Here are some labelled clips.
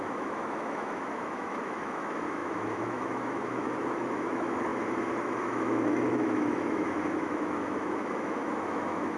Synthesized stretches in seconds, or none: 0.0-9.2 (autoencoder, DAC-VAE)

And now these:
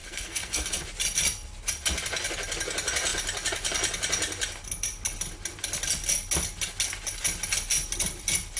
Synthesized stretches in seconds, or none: 0.0-0.8 (codec, SNAC)

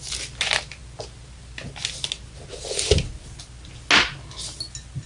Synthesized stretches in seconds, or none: none

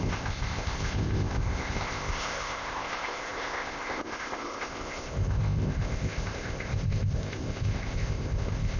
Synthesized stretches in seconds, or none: 0.0-8.8 (codec, ZipCodec)

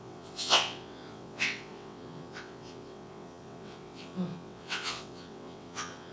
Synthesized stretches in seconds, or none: 0.0-6.1 (vocoder, WaveNeXt)

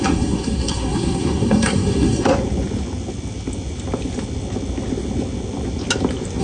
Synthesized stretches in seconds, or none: 0.0-2.3 (codec, SNAC)

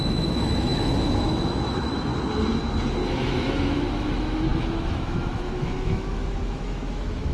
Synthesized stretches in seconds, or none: 0.0-2.1 (autoencoder, DAC-VAE); 3.1-7.3

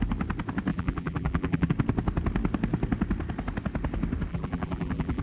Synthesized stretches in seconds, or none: 0.7-1.7 (vocoder, BigVGAN v2); 4.3-5.2